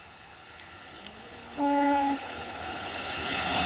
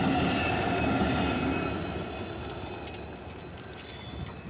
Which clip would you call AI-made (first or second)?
first